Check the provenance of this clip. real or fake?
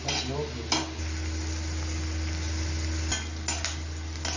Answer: real